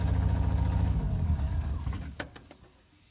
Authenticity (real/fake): fake